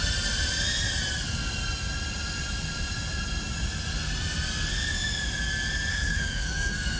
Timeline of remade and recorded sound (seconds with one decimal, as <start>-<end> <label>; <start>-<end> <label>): 0.0-5.9 recorded; 5.9-7.0 remade